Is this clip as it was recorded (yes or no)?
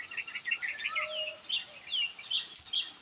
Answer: yes